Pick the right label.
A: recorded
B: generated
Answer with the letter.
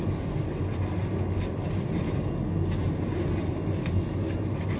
A